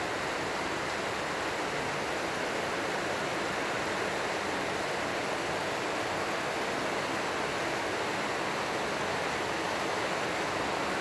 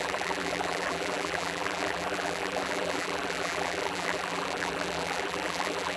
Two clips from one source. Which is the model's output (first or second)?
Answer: second